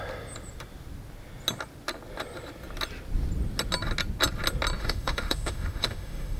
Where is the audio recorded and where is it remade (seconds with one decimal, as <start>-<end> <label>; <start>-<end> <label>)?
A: 0.0-4.8 recorded; 4.8-6.4 remade